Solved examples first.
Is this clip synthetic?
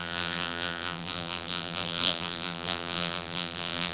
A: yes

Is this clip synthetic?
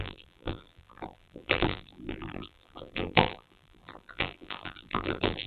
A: yes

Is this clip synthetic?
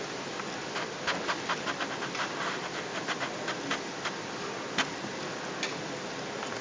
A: no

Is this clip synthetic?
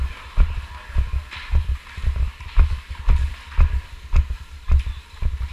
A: no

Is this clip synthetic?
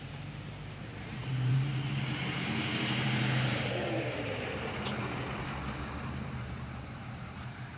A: yes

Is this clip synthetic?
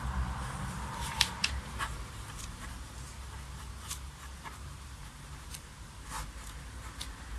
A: yes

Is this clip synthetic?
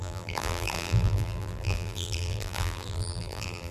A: yes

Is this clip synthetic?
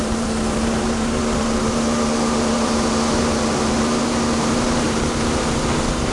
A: yes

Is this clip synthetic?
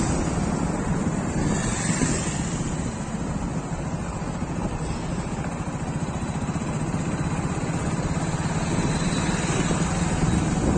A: no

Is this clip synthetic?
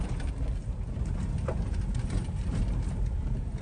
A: yes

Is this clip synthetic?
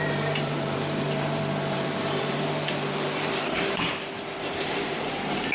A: yes